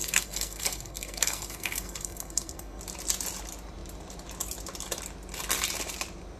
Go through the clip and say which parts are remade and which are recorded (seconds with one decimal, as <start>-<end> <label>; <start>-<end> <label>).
0.0-2.8 remade; 2.8-6.4 recorded